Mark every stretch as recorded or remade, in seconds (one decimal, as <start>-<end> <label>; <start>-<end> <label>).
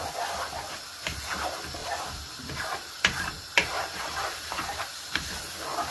0.0-1.8 recorded; 1.8-5.3 remade; 5.3-5.9 recorded